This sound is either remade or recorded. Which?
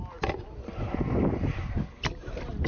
recorded